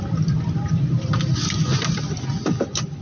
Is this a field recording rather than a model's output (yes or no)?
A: yes